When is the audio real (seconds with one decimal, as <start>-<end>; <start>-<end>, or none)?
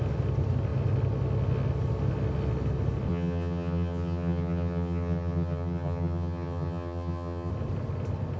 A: 0.0-3.1; 7.5-8.4